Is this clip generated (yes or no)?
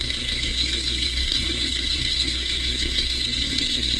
yes